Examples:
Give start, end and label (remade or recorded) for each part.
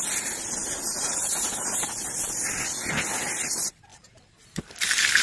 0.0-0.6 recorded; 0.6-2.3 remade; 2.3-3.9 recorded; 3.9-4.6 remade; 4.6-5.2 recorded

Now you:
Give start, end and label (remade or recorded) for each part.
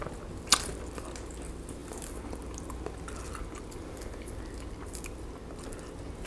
0.0-6.3 recorded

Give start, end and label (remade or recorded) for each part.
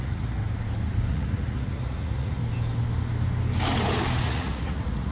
0.0-0.4 remade; 0.4-1.1 recorded; 1.1-2.4 remade; 2.4-4.2 recorded; 4.2-5.1 remade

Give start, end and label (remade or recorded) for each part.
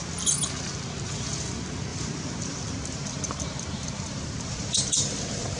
0.0-1.9 recorded; 1.9-5.6 remade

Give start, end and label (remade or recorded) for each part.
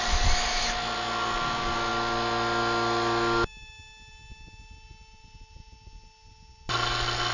0.0-7.3 recorded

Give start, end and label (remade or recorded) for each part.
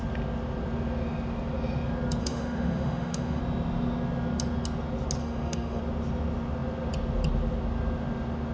0.0-2.2 recorded; 2.2-3.4 remade; 3.4-5.2 recorded; 5.2-5.8 remade; 5.8-8.5 recorded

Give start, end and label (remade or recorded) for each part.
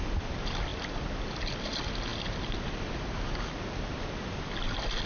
0.0-5.1 recorded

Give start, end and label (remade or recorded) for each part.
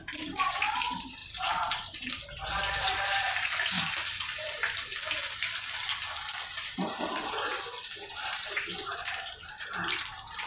0.0-4.9 remade; 4.9-6.4 recorded; 6.4-7.5 remade; 7.5-8.1 recorded; 8.1-10.5 remade